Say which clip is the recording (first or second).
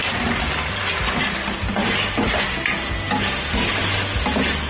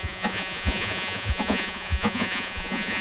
first